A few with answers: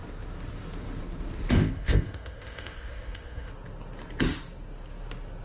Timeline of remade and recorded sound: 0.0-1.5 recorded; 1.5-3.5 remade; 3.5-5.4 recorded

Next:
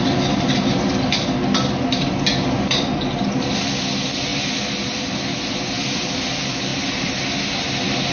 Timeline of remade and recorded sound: 0.0-8.1 recorded

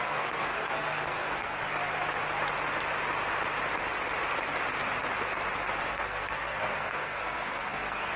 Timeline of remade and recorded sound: 0.0-1.6 remade; 1.6-5.9 recorded; 5.9-8.2 remade

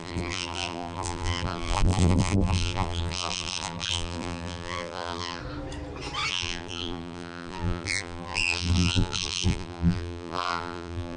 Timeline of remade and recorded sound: 0.0-5.4 remade; 5.4-6.3 recorded; 6.3-11.2 remade

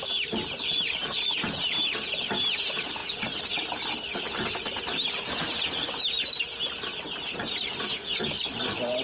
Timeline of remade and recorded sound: 0.0-9.0 remade

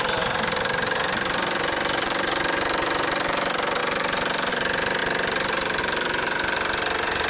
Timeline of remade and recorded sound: 0.0-7.3 remade

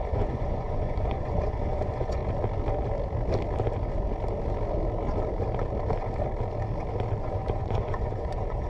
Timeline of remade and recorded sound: 0.0-2.2 remade; 2.2-7.2 recorded; 7.2-8.7 remade